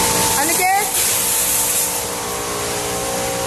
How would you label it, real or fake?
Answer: real